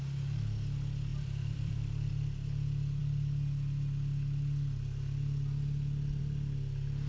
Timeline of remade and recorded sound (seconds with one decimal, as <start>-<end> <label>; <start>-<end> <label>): 0.0-1.1 recorded; 1.1-2.1 remade; 2.1-7.1 recorded